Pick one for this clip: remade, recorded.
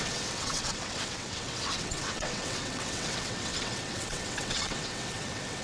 remade